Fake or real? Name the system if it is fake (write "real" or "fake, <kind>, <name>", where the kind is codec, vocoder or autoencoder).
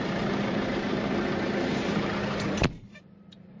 fake, vocoder, BigVGAN v2